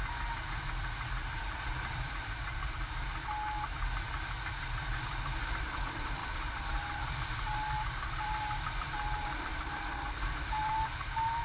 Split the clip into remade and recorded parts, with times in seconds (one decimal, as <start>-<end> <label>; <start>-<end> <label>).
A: 0.0-2.1 recorded; 2.1-3.1 remade; 3.1-5.5 recorded; 5.5-11.4 remade